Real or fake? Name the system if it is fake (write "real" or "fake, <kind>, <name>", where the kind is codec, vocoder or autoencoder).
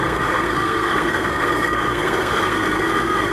fake, codec, SNAC